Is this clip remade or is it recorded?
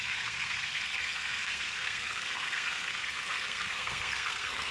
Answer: remade